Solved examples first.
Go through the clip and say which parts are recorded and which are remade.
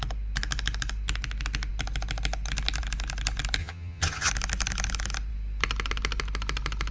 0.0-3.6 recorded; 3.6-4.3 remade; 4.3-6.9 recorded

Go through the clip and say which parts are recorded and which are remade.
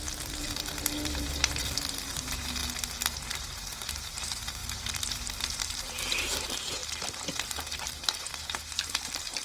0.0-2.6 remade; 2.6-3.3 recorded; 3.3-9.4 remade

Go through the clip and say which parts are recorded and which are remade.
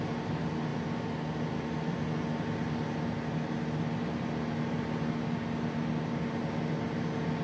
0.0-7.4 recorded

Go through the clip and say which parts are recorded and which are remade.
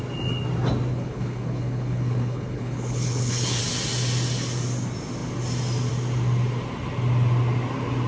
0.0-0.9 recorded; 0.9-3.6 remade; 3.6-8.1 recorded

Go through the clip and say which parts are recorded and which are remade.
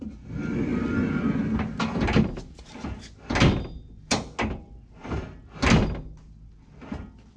0.0-7.4 recorded